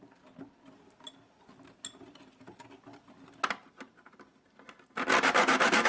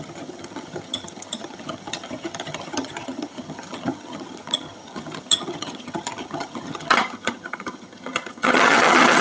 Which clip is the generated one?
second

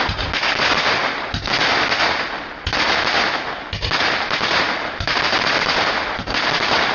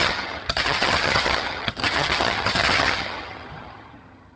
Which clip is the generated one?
second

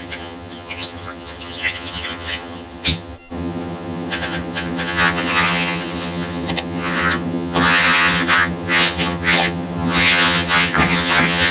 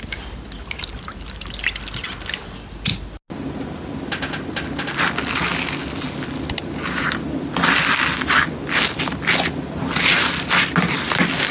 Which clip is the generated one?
first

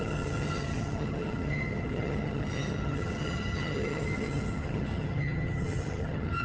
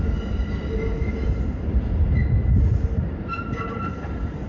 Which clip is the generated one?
first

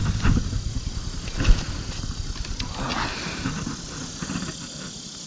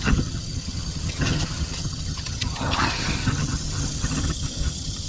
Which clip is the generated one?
second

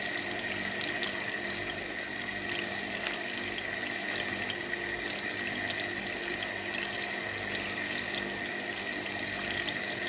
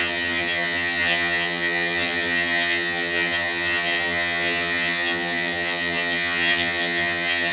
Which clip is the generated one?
second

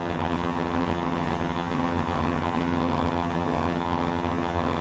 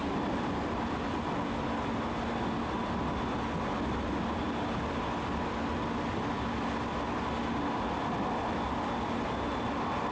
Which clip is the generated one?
first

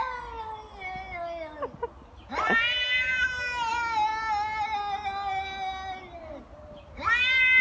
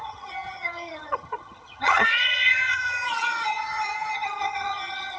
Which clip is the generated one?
second